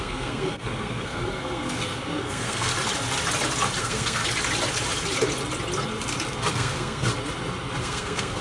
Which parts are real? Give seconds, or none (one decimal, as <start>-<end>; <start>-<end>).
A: 2.7-3.8; 4.2-6.5; 7.1-7.8